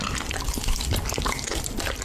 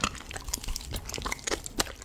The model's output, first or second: second